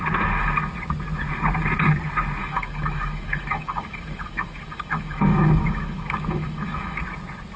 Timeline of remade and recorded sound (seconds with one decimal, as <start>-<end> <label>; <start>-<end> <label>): 0.0-2.4 recorded; 2.4-7.0 remade; 7.0-7.6 recorded